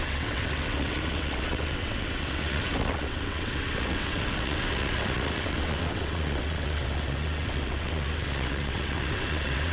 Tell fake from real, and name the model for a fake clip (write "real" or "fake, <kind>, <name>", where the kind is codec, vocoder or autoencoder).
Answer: fake, vocoder, WaveNeXt